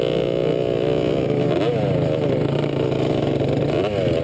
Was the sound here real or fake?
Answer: real